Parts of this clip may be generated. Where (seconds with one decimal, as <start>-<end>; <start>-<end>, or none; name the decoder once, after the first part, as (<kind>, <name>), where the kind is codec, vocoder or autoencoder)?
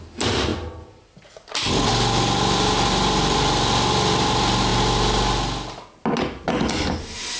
0.5-3.9 (vocoder, BigVGAN v2)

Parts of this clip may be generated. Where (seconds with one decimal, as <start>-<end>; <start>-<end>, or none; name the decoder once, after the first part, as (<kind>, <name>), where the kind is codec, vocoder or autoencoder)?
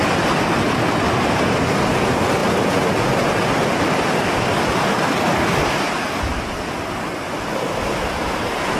none